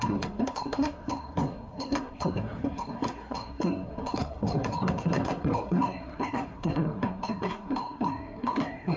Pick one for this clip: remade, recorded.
remade